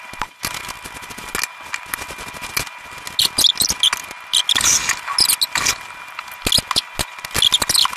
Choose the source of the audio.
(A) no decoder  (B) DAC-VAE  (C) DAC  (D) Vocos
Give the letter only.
A